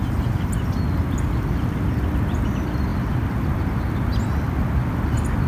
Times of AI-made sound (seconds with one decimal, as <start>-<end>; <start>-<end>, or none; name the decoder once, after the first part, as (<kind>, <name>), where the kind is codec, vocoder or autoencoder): none